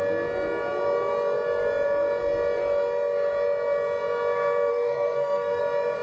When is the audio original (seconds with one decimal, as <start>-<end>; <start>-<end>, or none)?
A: 0.0-4.7; 5.6-6.0